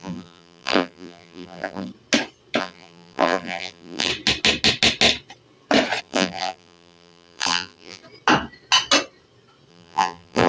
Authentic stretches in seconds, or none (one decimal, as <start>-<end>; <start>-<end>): 1.9-2.6; 4.1-6.0; 8.0-9.7